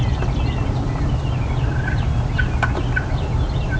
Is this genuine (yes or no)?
yes